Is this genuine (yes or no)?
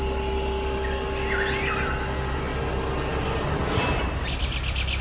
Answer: yes